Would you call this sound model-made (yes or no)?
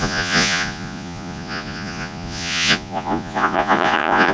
yes